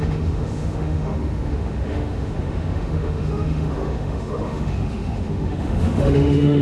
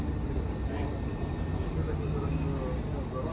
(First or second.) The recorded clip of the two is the second